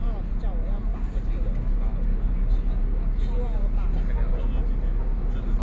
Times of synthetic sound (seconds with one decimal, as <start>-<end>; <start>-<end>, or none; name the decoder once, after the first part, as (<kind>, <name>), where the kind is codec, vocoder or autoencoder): none